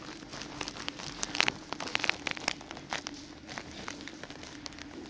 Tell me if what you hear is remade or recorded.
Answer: recorded